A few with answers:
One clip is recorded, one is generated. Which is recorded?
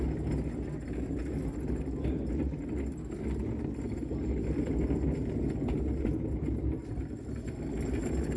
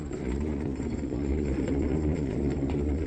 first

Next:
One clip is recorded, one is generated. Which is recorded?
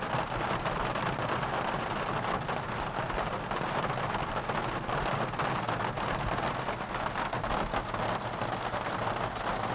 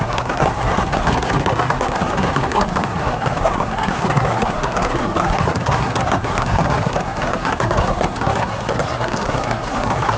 first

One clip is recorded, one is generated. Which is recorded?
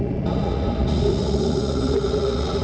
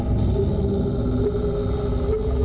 second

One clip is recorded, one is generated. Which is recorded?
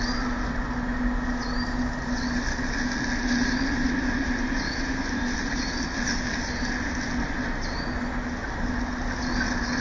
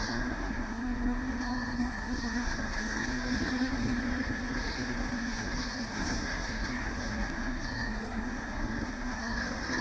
first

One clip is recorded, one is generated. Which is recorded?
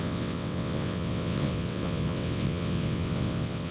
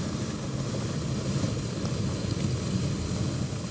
second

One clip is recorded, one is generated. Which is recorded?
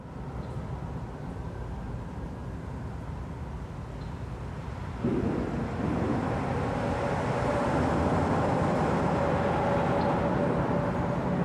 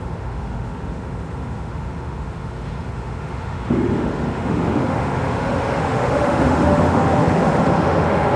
first